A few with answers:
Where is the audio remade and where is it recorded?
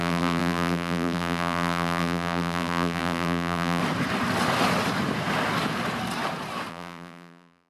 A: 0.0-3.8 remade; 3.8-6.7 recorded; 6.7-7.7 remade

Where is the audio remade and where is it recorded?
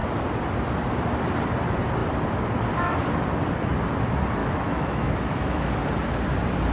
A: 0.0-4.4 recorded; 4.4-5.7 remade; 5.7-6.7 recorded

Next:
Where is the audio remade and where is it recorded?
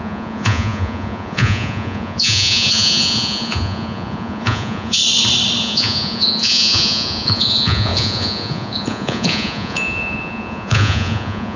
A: 0.0-5.0 remade; 5.0-5.6 recorded; 5.6-11.6 remade